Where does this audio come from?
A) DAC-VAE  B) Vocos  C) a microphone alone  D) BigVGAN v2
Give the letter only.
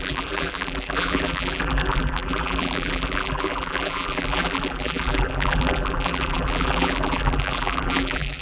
D